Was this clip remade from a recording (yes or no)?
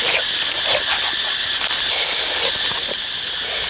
no